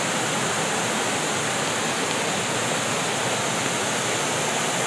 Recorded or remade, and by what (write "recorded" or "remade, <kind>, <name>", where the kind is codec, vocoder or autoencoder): recorded